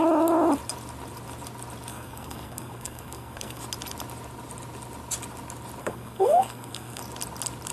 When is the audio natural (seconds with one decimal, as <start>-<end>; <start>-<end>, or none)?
0.0-1.9; 3.6-5.8; 7.0-7.7

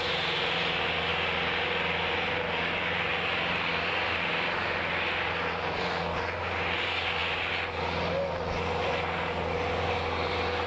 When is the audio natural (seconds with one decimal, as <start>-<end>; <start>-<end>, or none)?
0.0-10.7

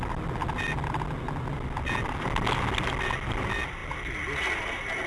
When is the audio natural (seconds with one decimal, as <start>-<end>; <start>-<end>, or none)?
0.0-5.1